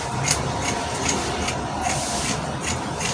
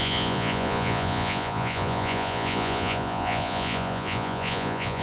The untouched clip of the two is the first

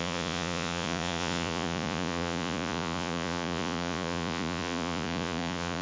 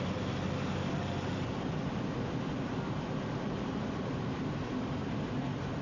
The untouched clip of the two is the second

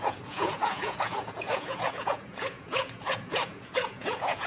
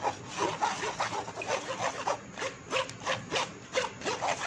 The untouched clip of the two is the second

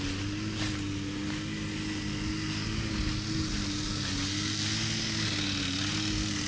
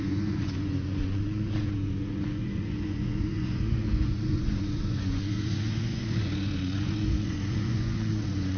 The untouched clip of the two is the first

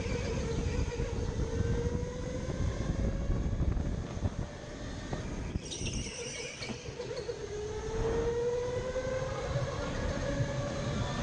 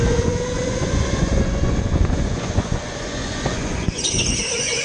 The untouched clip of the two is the first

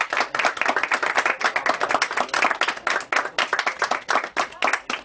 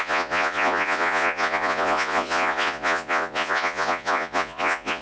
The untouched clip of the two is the first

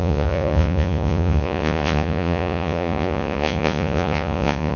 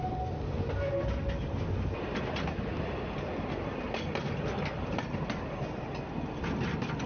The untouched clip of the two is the second